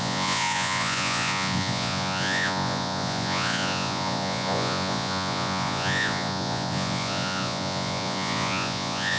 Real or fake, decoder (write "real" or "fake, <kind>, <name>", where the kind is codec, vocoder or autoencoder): fake, vocoder, Vocos